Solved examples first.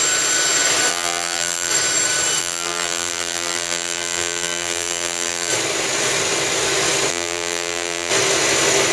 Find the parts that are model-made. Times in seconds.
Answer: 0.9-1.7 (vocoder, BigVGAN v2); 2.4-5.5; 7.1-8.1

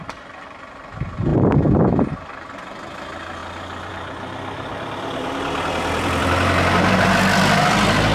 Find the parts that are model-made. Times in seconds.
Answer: 0.0-1.3 (vocoder, BigVGAN v2); 2.2-8.1

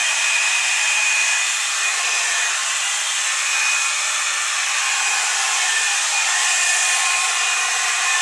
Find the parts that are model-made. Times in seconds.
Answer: 0.0-2.6 (vocoder, BigVGAN v2); 4.5-8.2

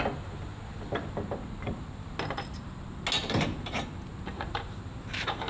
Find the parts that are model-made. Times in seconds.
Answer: 4.3-5.5 (vocoder, BigVGAN v2)

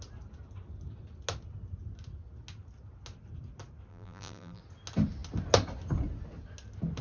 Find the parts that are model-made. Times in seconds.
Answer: 3.9-4.6 (vocoder, BigVGAN v2)

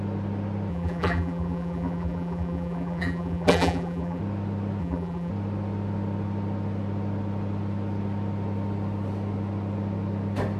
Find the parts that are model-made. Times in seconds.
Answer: 0.7-4.2 (vocoder, BigVGAN v2); 4.8-5.3

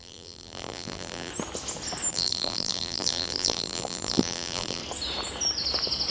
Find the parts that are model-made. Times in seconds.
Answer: 0.0-1.3 (vocoder, BigVGAN v2); 2.1-4.8

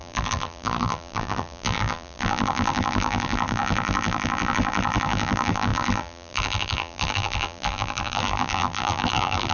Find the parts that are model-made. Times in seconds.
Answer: 0.0-9.5 (vocoder, BigVGAN v2)